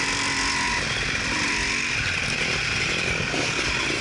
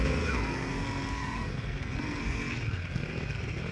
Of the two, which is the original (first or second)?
first